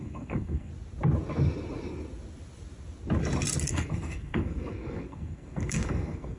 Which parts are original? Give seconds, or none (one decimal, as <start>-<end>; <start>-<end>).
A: 0.7-3.7